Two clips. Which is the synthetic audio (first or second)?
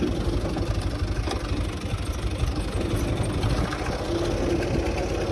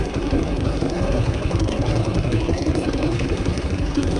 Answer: second